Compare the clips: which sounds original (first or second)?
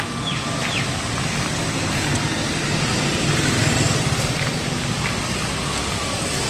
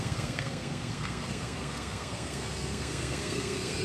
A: first